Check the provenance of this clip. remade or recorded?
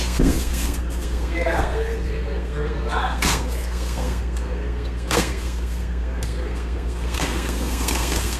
remade